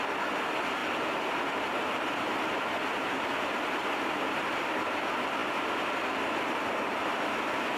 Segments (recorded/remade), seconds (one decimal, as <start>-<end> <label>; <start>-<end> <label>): 0.0-0.8 recorded; 0.8-2.1 remade; 2.1-5.4 recorded; 5.4-6.1 remade; 6.1-7.8 recorded